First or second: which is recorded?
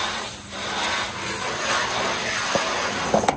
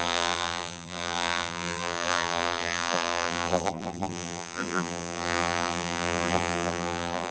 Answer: first